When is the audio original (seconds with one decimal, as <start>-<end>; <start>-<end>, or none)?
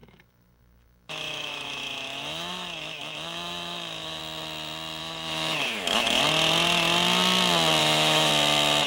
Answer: 4.2-5.0; 6.2-7.8; 8.3-8.9